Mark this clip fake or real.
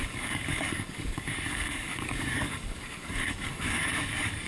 fake